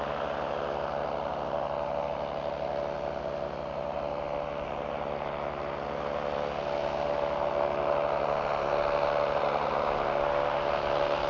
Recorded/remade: recorded